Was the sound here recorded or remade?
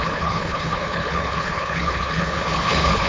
remade